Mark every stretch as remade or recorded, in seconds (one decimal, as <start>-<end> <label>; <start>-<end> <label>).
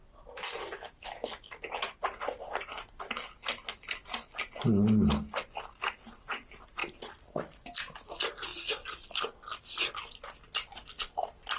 0.0-0.9 remade; 0.9-6.8 recorded; 6.8-7.6 remade; 7.6-11.6 recorded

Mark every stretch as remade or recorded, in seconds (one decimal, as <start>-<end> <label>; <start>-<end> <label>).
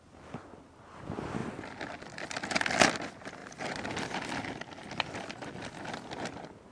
0.0-6.7 recorded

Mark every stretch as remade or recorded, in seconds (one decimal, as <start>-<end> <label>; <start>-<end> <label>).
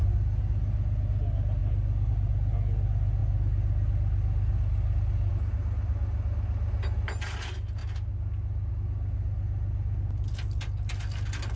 0.0-11.6 recorded